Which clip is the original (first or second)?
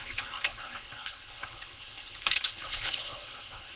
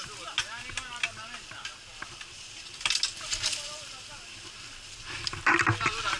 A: second